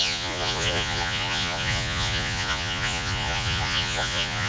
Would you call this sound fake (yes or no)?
yes